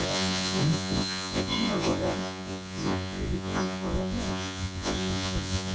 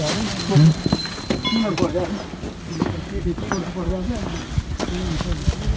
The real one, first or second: second